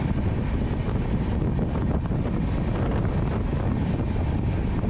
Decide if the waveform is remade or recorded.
recorded